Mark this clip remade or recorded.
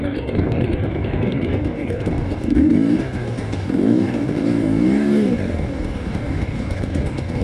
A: remade